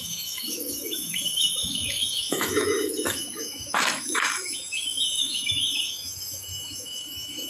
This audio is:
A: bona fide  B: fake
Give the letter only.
B